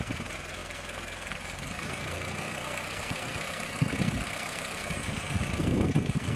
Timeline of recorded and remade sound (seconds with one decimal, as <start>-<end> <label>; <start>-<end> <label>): 0.0-6.4 remade